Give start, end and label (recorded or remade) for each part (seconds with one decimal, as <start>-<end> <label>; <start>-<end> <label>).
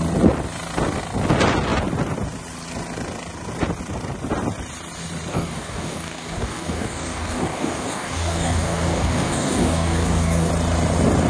0.0-5.3 recorded; 5.3-10.5 remade; 10.5-11.3 recorded